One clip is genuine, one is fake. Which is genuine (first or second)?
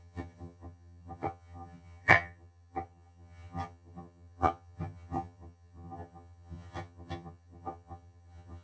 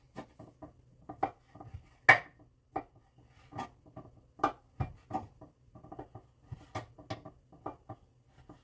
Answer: second